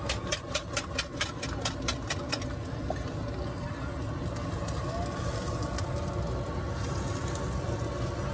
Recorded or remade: recorded